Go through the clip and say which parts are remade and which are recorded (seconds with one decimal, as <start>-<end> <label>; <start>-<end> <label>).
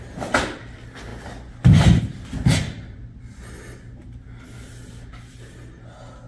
0.0-6.3 recorded